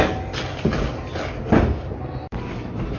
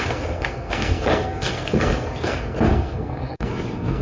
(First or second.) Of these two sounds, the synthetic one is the second